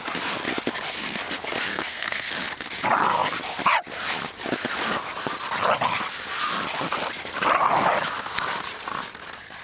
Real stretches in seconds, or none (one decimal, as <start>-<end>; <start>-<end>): 0.0-1.7; 2.3-9.6